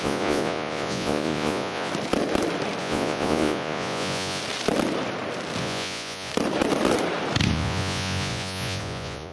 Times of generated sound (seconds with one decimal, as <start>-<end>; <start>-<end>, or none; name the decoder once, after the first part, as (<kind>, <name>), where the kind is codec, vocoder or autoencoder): 0.0-1.9 (vocoder, Vocos); 2.8-4.4; 5.6-6.3; 7.5-9.3